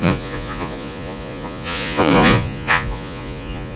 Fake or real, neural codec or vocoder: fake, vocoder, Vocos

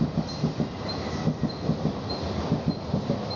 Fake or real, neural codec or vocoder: real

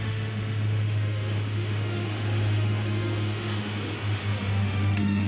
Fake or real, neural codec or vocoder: fake, autoencoder, DAC-VAE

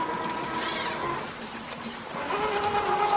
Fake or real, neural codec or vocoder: real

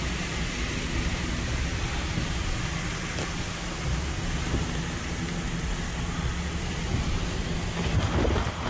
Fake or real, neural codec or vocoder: real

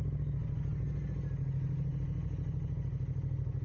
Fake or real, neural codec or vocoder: real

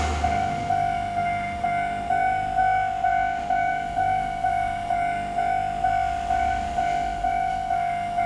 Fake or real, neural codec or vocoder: fake, autoencoder, DAC-VAE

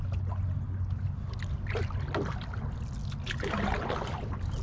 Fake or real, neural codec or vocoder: real